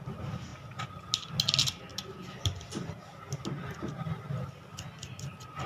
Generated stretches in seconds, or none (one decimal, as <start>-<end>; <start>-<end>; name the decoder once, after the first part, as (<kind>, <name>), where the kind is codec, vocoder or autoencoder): none